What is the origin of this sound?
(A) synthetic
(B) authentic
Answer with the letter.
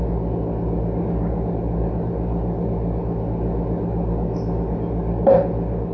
B